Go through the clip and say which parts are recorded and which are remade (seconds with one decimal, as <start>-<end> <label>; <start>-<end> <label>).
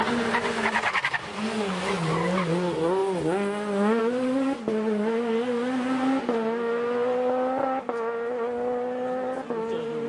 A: 0.0-10.1 recorded